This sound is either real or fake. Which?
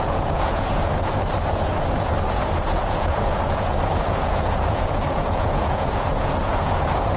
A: fake